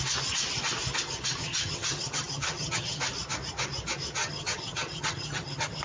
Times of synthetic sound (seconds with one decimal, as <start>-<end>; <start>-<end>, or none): 1.4-3.0; 4.2-5.8